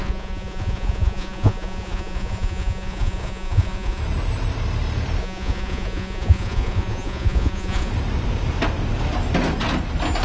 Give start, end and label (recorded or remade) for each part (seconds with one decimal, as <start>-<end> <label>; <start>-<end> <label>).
0.0-4.0 remade; 4.0-5.2 recorded; 5.2-7.9 remade; 7.9-10.2 recorded